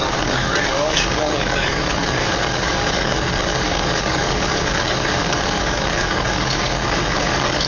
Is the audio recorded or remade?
remade